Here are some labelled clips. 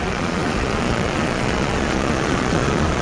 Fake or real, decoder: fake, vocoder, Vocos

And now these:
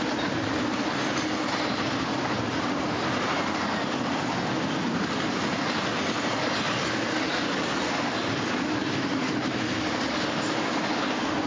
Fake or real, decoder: real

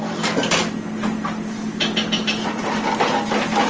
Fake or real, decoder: real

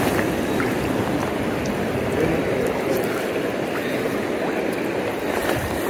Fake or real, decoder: real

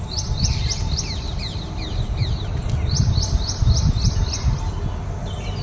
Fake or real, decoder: real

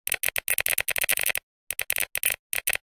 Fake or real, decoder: real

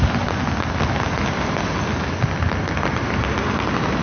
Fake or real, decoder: real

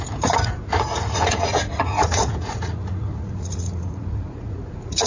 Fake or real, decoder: fake, vocoder, Vocos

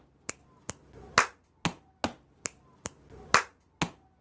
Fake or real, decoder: real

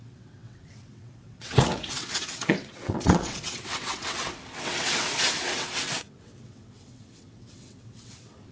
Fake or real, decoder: fake, vocoder, WaveNeXt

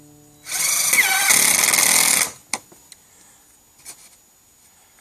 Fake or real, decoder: real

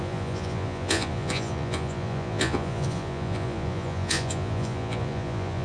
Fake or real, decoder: fake, vocoder, Vocos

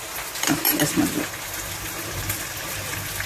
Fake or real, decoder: real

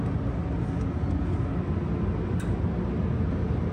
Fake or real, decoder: real